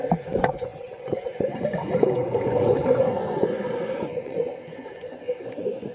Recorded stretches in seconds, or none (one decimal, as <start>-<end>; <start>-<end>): none